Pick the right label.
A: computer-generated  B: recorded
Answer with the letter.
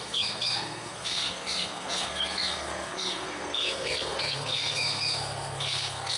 A